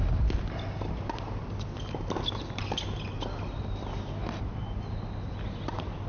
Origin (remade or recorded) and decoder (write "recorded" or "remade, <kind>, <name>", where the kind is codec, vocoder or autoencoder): recorded